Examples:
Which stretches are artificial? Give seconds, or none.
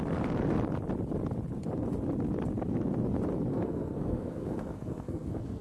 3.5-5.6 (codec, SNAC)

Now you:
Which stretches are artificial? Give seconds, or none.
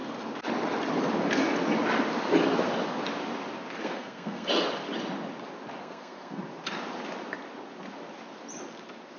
3.8-4.5 (codec, SNAC); 5.8-6.4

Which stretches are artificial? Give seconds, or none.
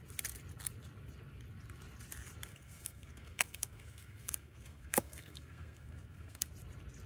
2.5-6.5 (codec, SNAC)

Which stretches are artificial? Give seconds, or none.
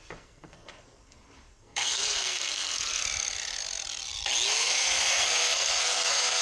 0.0-3.0 (codec, SNAC); 4.6-6.4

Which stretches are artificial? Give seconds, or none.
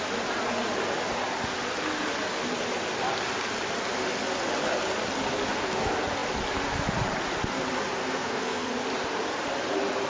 8.0-8.7 (codec, SNAC)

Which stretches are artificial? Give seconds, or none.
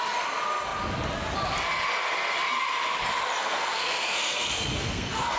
3.4-5.4 (codec, SNAC)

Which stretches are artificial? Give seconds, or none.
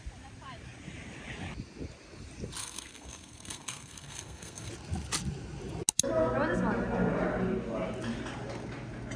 2.6-4.7 (codec, SNAC)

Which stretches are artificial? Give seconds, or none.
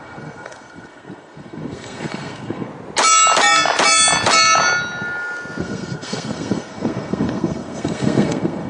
0.0-2.7 (codec, SNAC); 5.6-8.7